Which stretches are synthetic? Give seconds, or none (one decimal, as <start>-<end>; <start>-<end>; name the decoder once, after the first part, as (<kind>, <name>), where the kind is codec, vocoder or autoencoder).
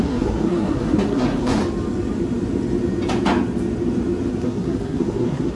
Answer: 0.0-1.6 (codec, SNAC); 4.4-5.6